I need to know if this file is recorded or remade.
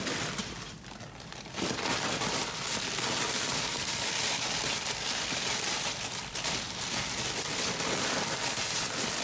remade